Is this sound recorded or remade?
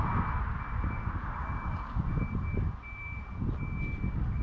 recorded